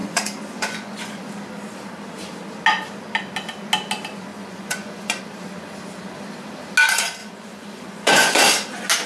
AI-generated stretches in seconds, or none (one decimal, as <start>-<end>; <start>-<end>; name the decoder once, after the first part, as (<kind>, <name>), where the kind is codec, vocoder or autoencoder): 0.0-1.2 (vocoder, Vocos); 4.3-5.2; 7.2-8.4